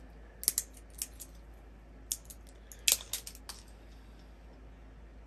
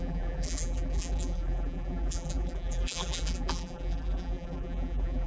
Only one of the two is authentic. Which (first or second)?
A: first